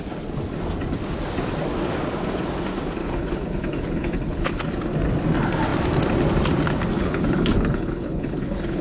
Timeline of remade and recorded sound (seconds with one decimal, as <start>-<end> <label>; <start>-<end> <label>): 0.0-3.0 recorded; 3.0-4.6 remade; 4.6-6.9 recorded; 6.9-8.8 remade